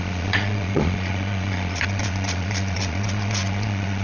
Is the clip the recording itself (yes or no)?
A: no